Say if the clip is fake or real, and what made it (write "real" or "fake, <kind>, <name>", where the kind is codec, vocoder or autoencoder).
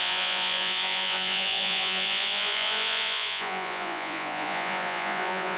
fake, vocoder, Vocos